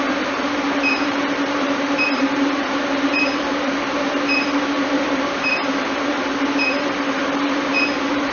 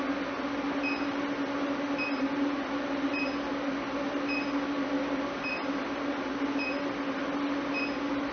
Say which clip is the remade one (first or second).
first